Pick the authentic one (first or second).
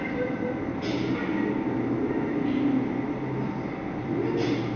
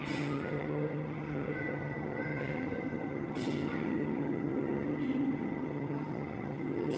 first